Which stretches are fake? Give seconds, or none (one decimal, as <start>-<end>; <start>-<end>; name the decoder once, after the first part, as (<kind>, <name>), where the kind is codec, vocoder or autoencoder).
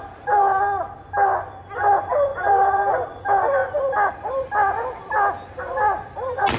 2.3-3.2 (vocoder, BigVGAN v2)